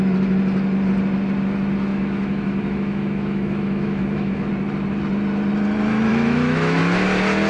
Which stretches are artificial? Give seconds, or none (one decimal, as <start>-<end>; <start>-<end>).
1.9-4.5; 6.1-6.8